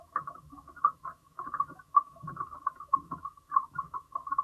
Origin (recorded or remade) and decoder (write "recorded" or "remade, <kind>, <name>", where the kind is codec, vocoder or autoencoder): remade, autoencoder, DAC-VAE